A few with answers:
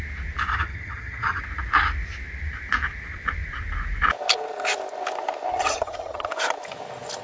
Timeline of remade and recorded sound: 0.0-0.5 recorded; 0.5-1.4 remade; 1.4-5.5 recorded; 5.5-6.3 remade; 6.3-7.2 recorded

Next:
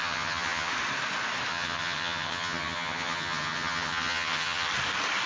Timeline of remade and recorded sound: 0.0-0.7 remade; 0.7-1.5 recorded; 1.5-4.7 remade; 4.7-5.3 recorded

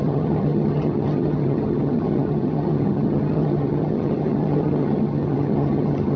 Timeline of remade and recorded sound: 0.0-6.2 remade

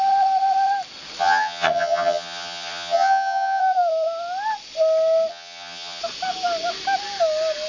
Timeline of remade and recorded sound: 0.0-1.2 recorded; 1.2-3.6 remade; 3.6-5.3 recorded; 5.3-6.0 remade; 6.0-7.7 recorded

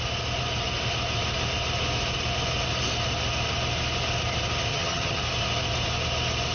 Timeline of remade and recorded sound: 0.0-4.7 recorded; 4.7-5.2 remade; 5.2-6.5 recorded